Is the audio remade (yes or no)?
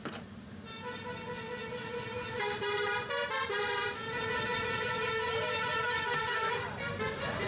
yes